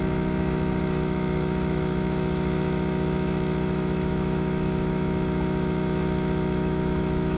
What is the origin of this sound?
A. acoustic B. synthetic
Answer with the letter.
B